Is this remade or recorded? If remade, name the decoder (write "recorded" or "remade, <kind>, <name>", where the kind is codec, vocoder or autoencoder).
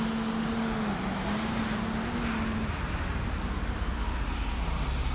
recorded